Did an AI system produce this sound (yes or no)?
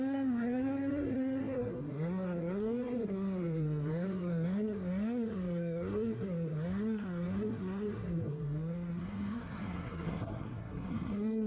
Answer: yes